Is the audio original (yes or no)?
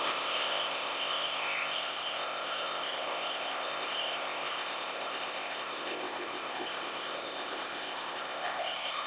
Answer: no